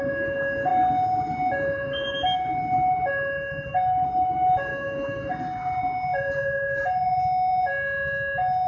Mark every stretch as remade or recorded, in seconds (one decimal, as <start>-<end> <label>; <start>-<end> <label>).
0.0-4.7 recorded; 4.7-5.3 remade; 5.3-8.7 recorded